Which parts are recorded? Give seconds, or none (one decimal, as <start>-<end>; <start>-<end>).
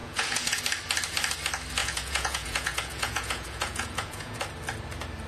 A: 0.6-1.8; 4.4-5.3